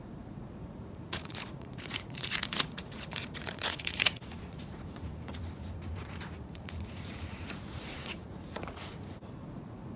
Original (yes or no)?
no